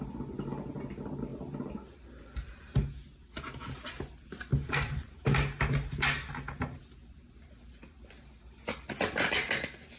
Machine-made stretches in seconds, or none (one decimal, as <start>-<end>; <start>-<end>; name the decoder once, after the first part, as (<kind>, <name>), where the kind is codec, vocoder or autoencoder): none